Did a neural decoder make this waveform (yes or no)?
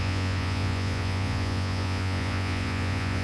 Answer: yes